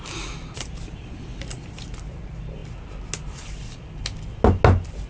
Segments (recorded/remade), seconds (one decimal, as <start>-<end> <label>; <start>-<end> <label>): 0.0-5.1 recorded